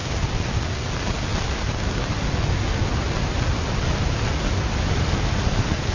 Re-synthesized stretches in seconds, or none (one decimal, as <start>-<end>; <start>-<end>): none